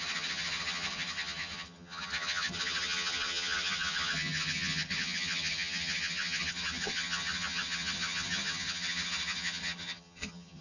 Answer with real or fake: fake